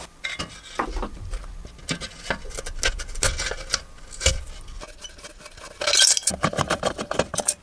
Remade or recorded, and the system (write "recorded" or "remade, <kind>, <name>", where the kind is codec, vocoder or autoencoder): recorded